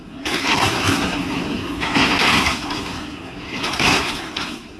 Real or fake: fake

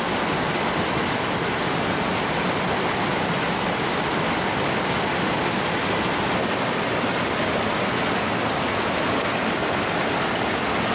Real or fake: real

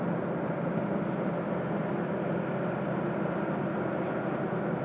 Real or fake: real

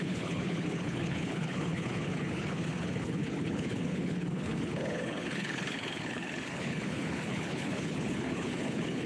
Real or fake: fake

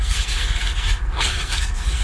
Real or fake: fake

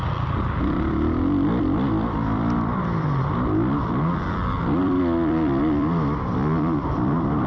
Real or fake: fake